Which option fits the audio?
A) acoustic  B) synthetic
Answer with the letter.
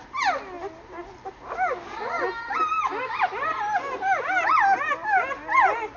A